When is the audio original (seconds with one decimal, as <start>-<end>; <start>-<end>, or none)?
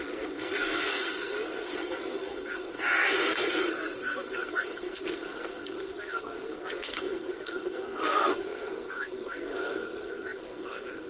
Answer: none